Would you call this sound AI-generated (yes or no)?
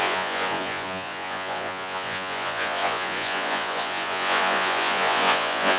yes